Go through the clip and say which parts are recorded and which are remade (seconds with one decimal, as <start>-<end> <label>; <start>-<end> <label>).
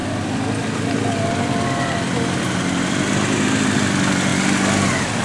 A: 0.0-5.2 recorded